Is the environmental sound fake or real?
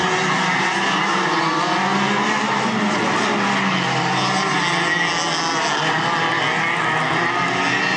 real